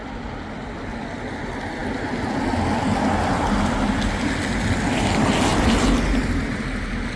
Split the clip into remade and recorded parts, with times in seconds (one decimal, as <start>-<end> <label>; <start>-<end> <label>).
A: 0.0-7.2 recorded